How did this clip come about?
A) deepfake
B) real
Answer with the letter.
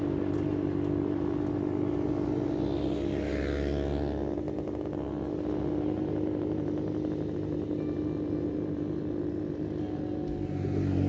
B